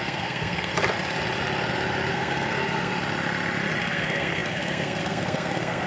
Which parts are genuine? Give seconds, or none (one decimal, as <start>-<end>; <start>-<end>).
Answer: 0.7-2.1; 2.9-3.8